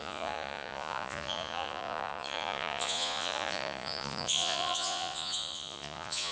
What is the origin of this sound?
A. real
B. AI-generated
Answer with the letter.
B